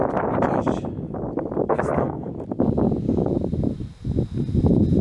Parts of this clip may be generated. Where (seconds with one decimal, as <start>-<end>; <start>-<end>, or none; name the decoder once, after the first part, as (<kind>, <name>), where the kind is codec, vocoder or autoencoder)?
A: 1.7-2.3 (codec, SNAC)